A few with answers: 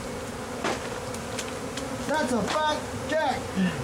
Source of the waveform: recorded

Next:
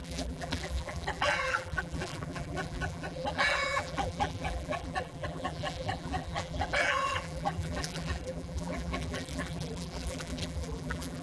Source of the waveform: remade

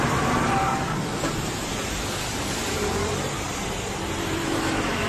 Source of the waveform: remade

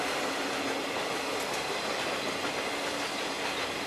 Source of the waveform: recorded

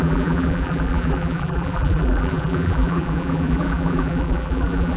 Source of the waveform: remade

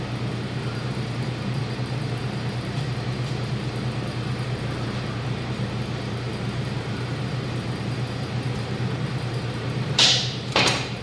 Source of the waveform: remade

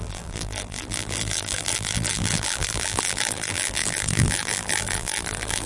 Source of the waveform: remade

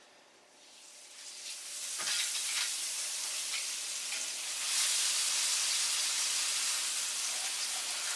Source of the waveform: remade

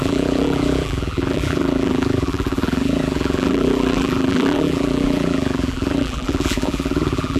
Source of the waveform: remade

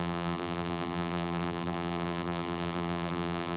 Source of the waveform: remade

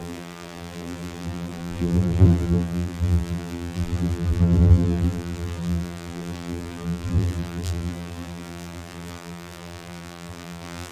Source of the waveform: remade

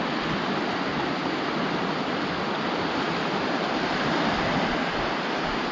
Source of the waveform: recorded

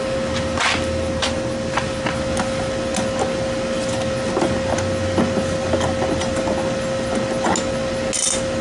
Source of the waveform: recorded